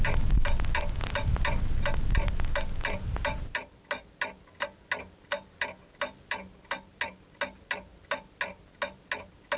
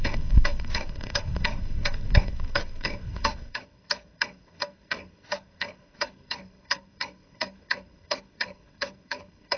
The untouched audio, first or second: first